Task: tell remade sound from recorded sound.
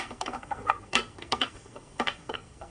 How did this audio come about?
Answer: remade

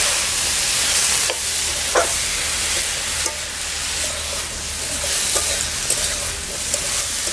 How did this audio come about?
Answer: recorded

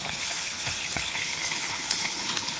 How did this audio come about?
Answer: remade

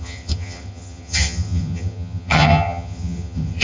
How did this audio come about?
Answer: remade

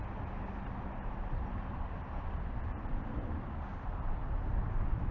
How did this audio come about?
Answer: recorded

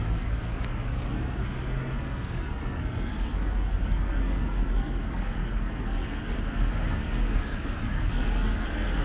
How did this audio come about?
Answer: remade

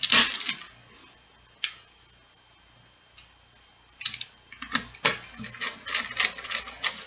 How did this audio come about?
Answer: recorded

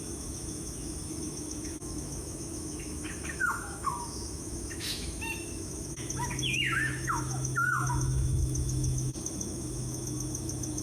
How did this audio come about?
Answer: remade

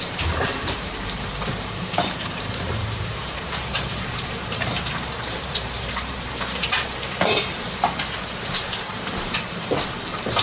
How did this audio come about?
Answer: remade